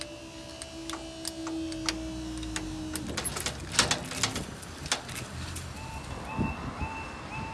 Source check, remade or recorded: recorded